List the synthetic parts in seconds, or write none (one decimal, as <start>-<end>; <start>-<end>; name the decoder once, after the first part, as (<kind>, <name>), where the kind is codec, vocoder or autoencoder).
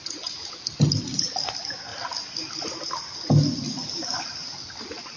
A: none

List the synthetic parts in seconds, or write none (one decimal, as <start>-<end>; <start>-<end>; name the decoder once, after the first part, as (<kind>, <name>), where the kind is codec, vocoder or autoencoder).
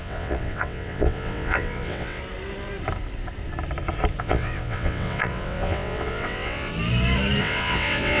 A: 0.0-2.2 (vocoder, WaveNeXt); 4.2-6.7; 7.4-8.2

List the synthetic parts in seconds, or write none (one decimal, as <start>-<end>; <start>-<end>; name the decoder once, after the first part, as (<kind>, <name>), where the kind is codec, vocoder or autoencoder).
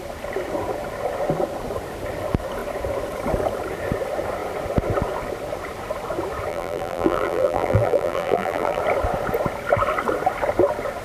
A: 6.5-8.8 (vocoder, BigVGAN v2)